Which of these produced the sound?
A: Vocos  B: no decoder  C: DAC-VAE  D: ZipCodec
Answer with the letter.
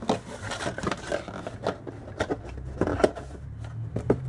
B